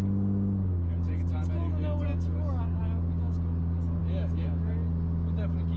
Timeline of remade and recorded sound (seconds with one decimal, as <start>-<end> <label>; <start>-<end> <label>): 0.0-5.8 recorded